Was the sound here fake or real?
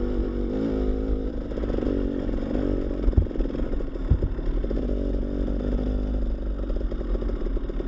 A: real